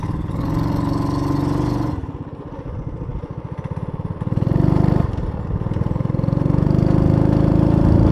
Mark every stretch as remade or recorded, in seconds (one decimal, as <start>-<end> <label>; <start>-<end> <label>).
0.0-8.1 recorded